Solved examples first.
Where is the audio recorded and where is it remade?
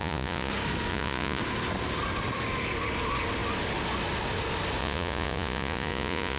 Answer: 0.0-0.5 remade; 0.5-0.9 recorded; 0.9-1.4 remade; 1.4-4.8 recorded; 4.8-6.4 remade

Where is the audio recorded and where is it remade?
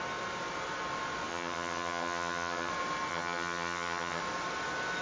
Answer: 0.0-1.3 recorded; 1.3-2.7 remade; 2.7-3.1 recorded; 3.1-4.2 remade; 4.2-5.0 recorded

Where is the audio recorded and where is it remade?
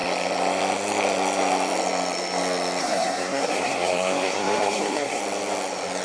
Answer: 0.0-2.8 recorded; 2.8-5.2 remade; 5.2-6.0 recorded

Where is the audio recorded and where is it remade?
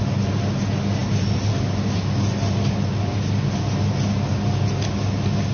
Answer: 0.0-5.5 recorded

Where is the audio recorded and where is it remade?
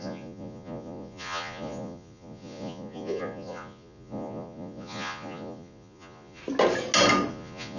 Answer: 0.0-6.4 remade; 6.4-7.3 recorded; 7.3-7.8 remade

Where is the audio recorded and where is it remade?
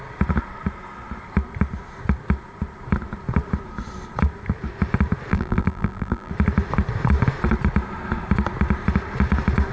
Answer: 0.0-5.3 recorded; 5.3-6.3 remade; 6.3-9.7 recorded